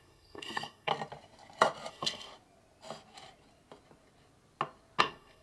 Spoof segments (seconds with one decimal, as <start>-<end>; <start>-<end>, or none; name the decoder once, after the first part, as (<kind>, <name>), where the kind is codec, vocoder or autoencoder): 0.0-0.9 (codec, SNAC); 1.9-2.3; 5.0-5.4